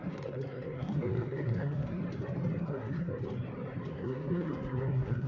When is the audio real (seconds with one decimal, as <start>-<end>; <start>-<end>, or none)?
2.0-2.6; 3.1-3.9